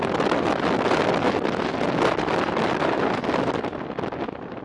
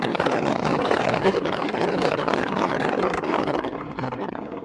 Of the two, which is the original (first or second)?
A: first